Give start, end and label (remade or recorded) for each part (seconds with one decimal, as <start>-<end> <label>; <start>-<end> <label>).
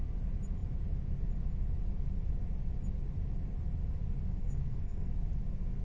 0.0-4.4 recorded; 4.4-5.1 remade; 5.1-5.8 recorded